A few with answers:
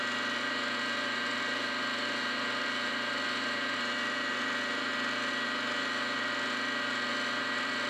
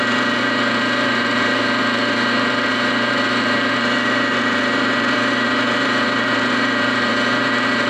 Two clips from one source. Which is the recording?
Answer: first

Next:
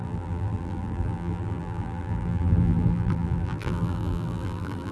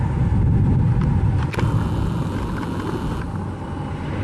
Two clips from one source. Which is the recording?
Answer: second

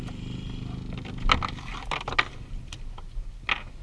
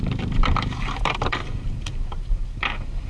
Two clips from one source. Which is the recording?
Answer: first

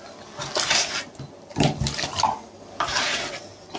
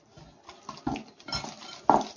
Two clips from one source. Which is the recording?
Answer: second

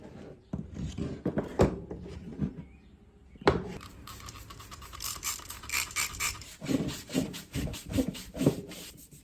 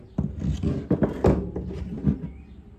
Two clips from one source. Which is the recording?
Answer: second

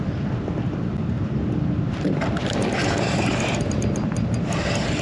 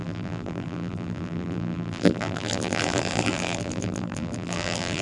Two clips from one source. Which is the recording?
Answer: first